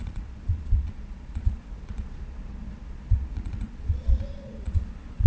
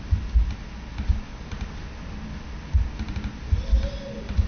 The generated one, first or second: first